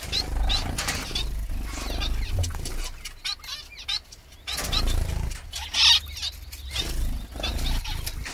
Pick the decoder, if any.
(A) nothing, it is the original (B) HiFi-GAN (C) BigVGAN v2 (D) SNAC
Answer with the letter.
A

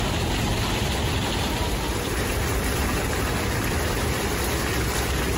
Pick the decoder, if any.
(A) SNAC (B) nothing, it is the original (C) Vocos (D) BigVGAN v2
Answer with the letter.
B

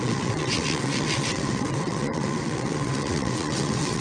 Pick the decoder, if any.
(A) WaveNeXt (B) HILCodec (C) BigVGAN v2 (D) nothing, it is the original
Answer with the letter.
A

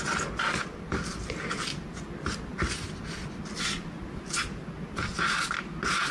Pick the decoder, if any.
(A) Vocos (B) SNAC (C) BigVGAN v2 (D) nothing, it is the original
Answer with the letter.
D